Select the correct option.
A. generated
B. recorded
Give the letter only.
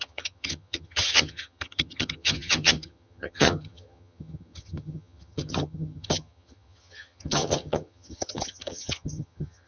A